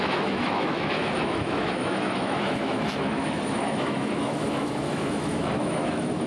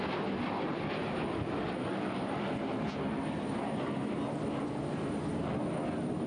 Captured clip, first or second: second